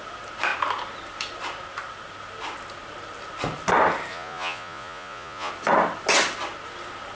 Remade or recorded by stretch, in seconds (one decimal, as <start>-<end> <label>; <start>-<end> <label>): 0.0-4.1 recorded; 4.1-5.5 remade; 5.5-7.1 recorded